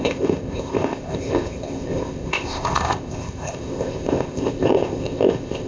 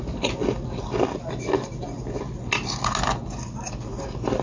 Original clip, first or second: second